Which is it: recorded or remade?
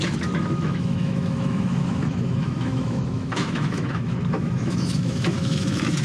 remade